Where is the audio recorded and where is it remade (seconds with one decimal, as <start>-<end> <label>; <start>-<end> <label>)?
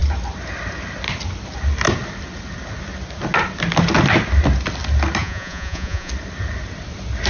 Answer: 0.0-5.2 recorded; 5.2-6.1 remade; 6.1-7.3 recorded